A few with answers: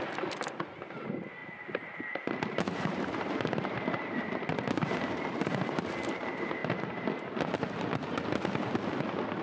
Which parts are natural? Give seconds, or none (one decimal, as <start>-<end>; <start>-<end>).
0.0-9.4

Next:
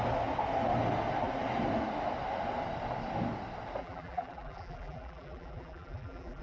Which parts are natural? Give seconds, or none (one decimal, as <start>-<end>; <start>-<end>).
0.0-3.8

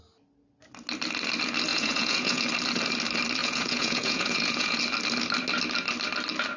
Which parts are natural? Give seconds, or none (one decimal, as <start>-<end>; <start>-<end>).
0.0-1.7; 2.4-3.4; 4.8-6.6